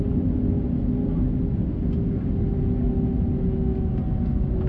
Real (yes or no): yes